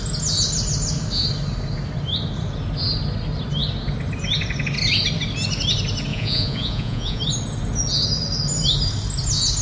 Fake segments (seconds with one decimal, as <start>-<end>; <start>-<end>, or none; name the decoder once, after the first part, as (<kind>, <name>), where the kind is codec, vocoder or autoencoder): 6.1-7.2 (vocoder, Vocos)